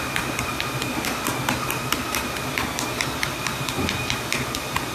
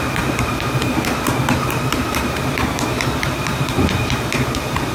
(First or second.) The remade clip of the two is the second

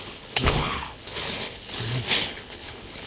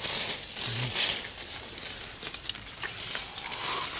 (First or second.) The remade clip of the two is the first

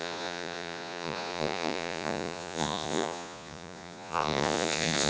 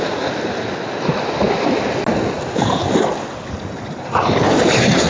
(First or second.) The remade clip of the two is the first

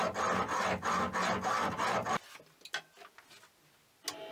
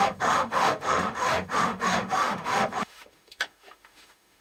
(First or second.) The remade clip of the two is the second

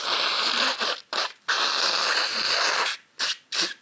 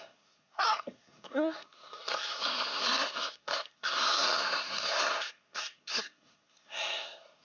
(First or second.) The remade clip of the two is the second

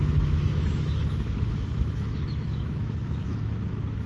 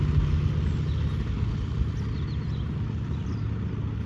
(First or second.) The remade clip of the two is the first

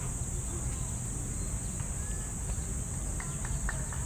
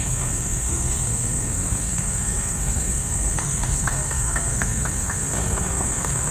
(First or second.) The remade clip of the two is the second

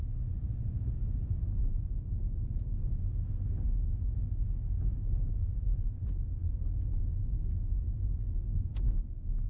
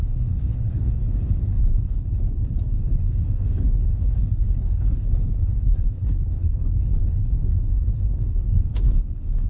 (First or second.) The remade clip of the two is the second